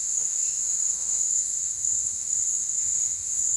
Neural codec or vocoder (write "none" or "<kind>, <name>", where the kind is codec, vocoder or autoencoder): autoencoder, DAC-VAE